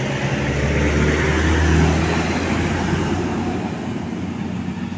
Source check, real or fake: real